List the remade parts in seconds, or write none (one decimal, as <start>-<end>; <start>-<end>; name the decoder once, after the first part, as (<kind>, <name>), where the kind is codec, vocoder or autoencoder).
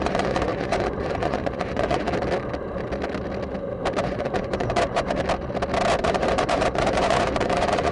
0.0-2.1 (vocoder, Vocos); 4.0-5.2; 6.0-7.9